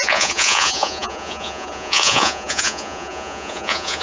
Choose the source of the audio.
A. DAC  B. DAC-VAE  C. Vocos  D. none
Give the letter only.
C